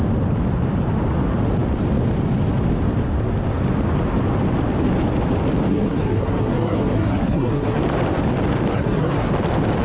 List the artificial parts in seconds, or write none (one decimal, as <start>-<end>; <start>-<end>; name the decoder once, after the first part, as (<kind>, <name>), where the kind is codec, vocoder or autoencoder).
5.7-7.8 (codec, SNAC); 8.7-9.3